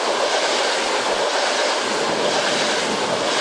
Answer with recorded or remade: recorded